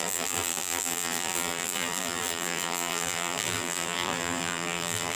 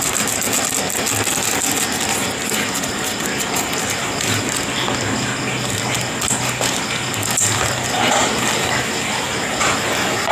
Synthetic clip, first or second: first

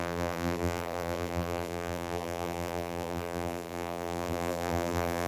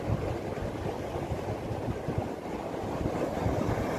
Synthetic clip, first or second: first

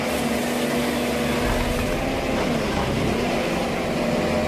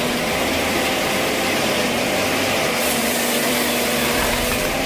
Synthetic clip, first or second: second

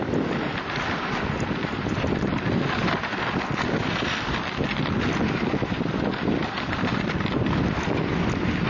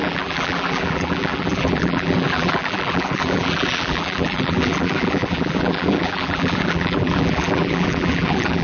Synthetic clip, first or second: second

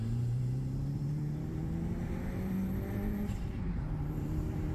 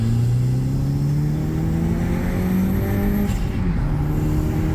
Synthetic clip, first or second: first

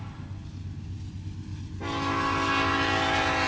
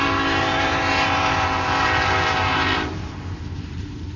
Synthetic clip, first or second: second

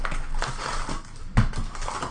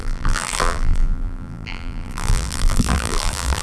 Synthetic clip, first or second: second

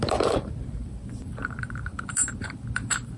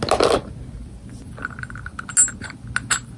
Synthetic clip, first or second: first